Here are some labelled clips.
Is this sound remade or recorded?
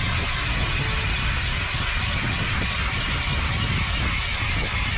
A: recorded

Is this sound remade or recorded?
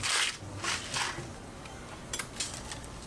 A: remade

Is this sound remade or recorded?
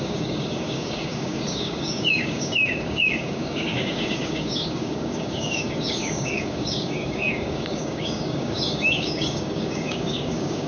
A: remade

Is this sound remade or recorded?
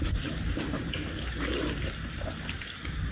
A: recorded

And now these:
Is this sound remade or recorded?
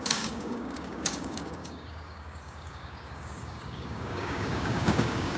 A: remade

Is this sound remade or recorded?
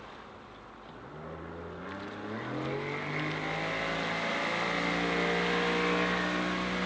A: recorded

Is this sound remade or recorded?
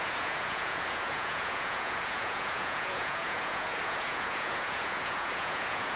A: remade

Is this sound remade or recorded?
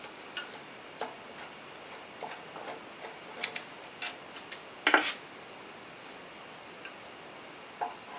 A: recorded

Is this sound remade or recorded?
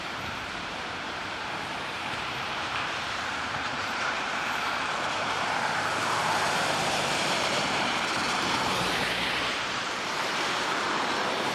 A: remade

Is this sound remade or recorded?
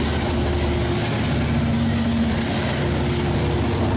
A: recorded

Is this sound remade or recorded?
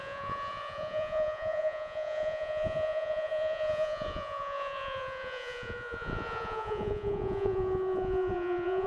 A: remade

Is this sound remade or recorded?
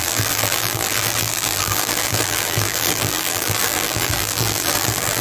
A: remade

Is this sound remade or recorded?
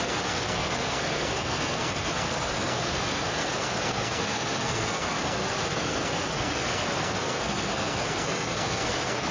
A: remade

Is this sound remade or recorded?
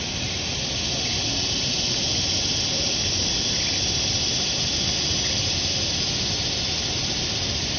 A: recorded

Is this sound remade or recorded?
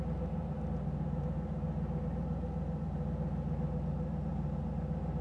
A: recorded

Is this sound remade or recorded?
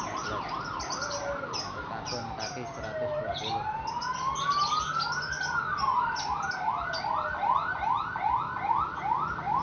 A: recorded